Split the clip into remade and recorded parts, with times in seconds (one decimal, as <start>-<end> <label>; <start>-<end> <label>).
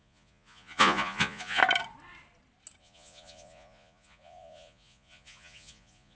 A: 0.0-1.6 remade; 1.6-2.8 recorded; 2.8-6.2 remade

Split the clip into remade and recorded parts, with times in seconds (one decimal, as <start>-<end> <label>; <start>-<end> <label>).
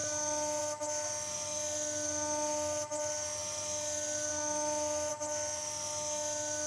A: 0.0-6.7 recorded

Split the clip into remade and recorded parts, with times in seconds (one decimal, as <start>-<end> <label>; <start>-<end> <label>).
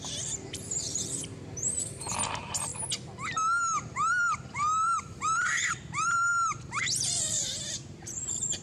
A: 0.0-2.7 remade; 2.7-4.1 recorded; 4.1-8.6 remade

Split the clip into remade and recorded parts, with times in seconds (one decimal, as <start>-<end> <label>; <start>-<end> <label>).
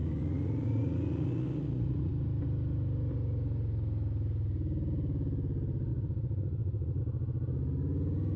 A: 0.0-2.1 remade; 2.1-5.9 recorded; 5.9-7.0 remade; 7.0-8.4 recorded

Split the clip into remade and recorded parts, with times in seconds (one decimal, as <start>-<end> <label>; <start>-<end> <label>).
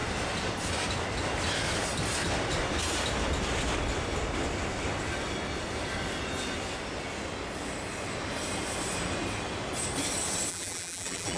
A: 0.0-10.5 recorded; 10.5-11.4 remade